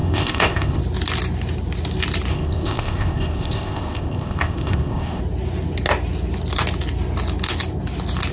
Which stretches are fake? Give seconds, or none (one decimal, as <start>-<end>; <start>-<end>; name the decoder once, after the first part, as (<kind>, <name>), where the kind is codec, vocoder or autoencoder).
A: 0.0-0.8 (codec, ZipCodec); 2.3-5.2